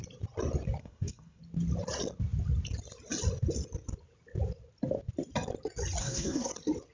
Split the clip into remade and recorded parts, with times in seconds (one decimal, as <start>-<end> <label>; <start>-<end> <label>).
0.0-0.8 recorded; 0.8-1.4 remade; 1.4-6.0 recorded; 6.0-6.5 remade; 6.5-6.9 recorded